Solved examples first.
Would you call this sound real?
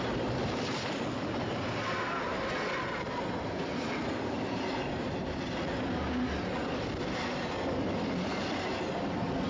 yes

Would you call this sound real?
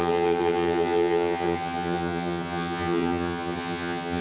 no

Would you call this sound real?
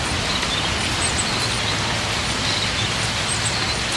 yes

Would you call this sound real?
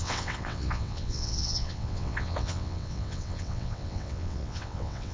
no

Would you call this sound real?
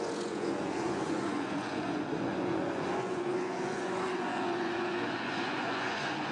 no